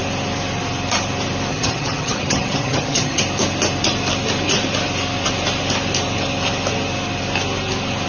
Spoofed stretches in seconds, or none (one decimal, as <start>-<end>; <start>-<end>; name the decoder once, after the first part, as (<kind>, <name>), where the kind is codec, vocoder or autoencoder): 1.5-3.2 (vocoder, HiFi-GAN)